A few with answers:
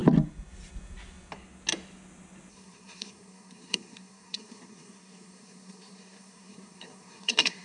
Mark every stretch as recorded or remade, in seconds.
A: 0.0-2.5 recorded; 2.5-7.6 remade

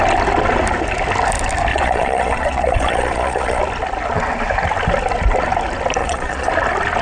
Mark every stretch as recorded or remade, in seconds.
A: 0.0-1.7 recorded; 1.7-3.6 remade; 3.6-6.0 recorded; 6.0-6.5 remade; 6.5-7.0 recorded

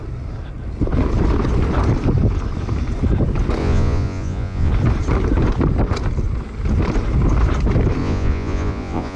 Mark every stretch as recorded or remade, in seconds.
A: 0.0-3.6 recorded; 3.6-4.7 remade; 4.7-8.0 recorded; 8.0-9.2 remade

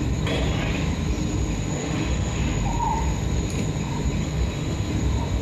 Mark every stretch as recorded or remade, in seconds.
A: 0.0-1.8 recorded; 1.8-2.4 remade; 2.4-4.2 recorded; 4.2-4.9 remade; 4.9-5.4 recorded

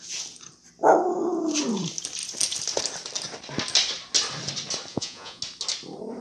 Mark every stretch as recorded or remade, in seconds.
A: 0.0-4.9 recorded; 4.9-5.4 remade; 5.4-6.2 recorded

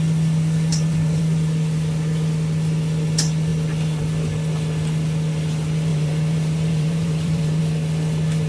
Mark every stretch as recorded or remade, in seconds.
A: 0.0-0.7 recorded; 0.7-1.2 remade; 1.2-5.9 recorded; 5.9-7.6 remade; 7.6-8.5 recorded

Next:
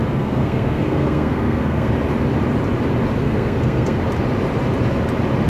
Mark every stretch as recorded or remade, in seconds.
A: 0.0-1.9 remade; 1.9-3.2 recorded; 3.2-4.0 remade; 4.0-5.5 recorded

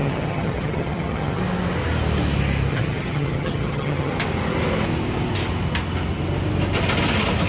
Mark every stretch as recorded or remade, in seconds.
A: 0.0-1.4 remade; 1.4-2.7 recorded; 2.7-4.1 remade; 4.1-7.5 recorded